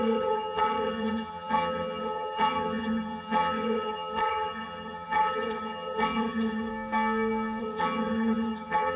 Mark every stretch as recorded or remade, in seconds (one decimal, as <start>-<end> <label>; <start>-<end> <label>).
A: 0.0-6.7 remade; 6.7-7.6 recorded; 7.6-9.0 remade